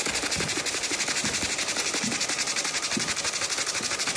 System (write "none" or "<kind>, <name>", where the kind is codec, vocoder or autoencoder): none